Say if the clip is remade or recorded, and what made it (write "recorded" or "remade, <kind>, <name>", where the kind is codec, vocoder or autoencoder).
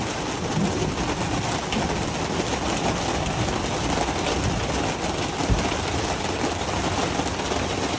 recorded